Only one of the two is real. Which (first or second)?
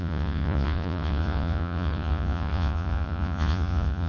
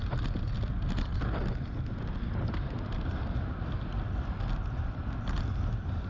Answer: second